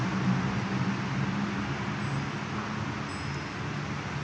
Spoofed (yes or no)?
no